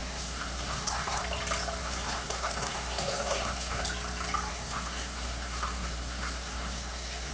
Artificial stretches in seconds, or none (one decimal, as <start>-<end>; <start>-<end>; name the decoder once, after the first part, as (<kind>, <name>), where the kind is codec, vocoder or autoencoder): 0.0-1.2 (codec, SNAC); 1.8-3.8; 4.5-7.3